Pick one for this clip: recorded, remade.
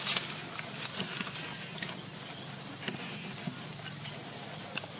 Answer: recorded